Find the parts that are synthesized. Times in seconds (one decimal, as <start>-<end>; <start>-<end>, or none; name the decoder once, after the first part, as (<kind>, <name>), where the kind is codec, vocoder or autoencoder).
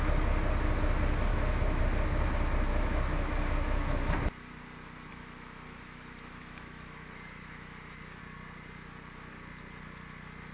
1.3-1.8 (autoencoder, DAC-VAE); 2.7-4.1; 5.1-8.2